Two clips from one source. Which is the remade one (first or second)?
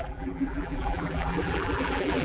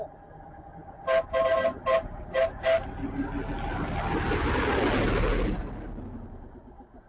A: first